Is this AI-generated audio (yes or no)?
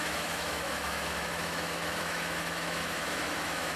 yes